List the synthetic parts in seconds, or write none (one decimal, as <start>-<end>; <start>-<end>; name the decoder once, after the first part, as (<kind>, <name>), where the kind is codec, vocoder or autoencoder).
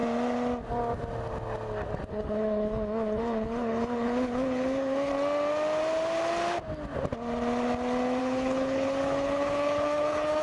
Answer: 2.1-5.1 (codec, HILCodec); 8.2-10.4